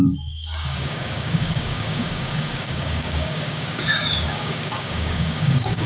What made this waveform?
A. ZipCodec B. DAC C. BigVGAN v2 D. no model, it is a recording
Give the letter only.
B